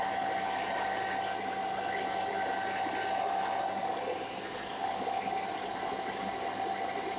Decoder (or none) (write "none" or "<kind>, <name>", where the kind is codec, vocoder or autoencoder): none